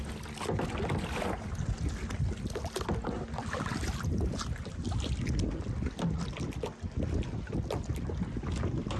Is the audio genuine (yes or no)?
yes